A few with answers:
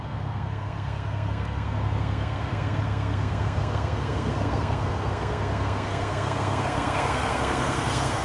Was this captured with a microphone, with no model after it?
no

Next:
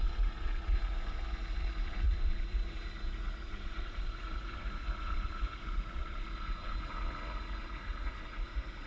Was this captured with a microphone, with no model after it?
no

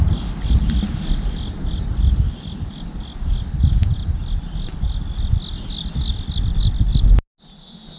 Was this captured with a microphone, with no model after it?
yes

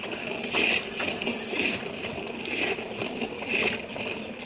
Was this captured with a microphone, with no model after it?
yes